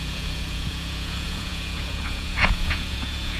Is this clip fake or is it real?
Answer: fake